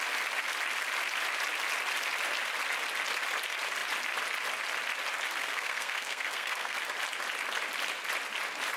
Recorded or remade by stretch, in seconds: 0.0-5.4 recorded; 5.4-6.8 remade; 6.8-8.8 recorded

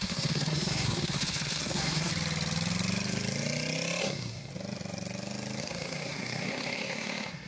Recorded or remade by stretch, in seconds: 0.0-2.1 remade; 2.1-4.0 recorded; 4.0-4.5 remade; 4.5-5.6 recorded; 5.6-7.5 remade